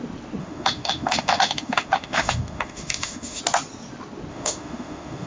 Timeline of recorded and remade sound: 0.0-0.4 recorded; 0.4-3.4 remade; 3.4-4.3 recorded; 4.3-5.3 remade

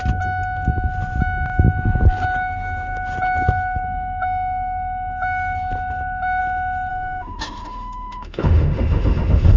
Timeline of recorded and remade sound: 0.0-6.9 recorded; 6.9-9.6 remade

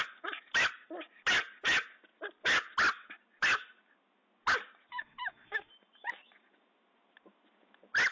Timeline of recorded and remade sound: 0.0-4.9 recorded; 4.9-5.7 remade; 5.7-8.1 recorded

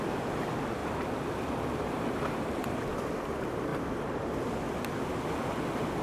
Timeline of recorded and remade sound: 0.0-6.0 recorded

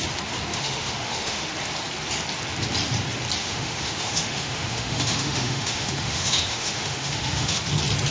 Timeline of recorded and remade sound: 0.0-0.5 recorded; 0.5-1.5 remade; 1.5-3.4 recorded; 3.4-7.6 remade; 7.6-8.1 recorded

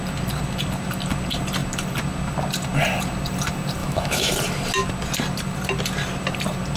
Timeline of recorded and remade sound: 0.0-3.8 recorded; 3.8-4.3 remade; 4.3-6.8 recorded

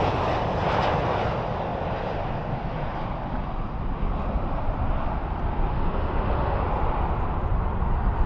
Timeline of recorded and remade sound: 0.0-5.7 recorded; 5.7-6.6 remade; 6.6-8.3 recorded